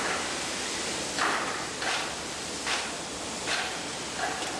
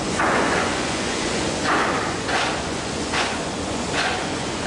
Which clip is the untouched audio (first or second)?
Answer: first